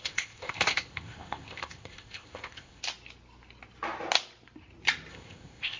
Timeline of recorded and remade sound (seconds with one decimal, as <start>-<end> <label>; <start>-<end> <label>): 0.0-2.8 remade; 2.8-5.1 recorded; 5.1-5.8 remade